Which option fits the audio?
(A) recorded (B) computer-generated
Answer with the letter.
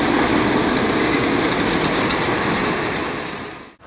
A